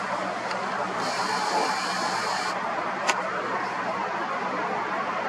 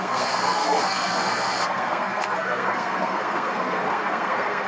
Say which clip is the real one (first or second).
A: first